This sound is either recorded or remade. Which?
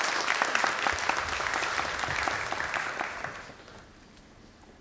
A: recorded